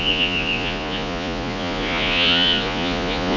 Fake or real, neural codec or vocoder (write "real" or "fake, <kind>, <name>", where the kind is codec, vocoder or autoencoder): fake, vocoder, Vocos